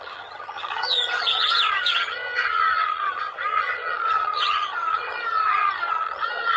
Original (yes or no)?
no